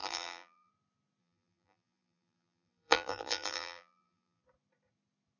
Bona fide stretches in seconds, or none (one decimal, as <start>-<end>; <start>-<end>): 0.7-1.2; 4.4-5.4